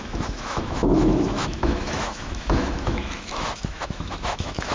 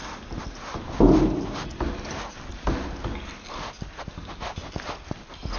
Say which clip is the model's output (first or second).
first